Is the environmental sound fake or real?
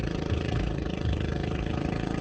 fake